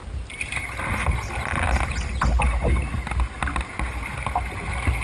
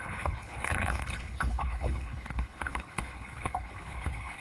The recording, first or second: first